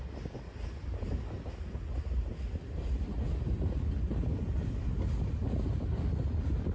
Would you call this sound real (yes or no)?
yes